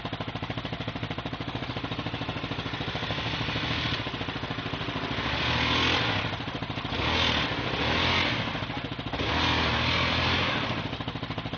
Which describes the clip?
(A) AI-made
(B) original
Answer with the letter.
B